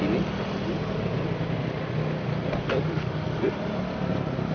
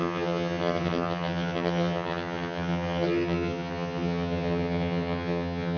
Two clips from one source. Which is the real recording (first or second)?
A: first